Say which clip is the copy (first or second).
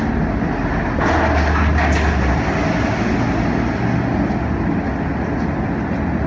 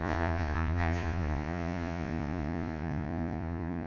second